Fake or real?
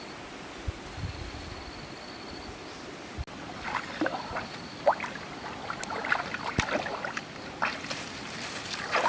real